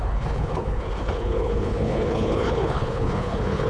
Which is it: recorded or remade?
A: remade